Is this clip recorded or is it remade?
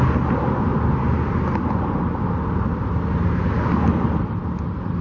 recorded